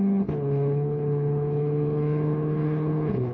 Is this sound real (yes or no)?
no